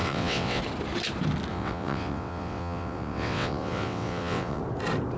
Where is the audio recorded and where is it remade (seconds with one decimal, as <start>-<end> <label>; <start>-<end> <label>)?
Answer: 0.0-0.6 remade; 0.6-1.5 recorded; 1.5-4.6 remade; 4.6-5.2 recorded